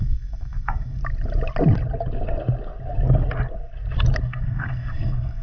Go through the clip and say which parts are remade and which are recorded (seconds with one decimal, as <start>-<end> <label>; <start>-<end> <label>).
0.0-1.0 remade; 1.0-4.2 recorded; 4.2-5.4 remade